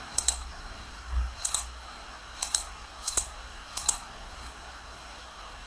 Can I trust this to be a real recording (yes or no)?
no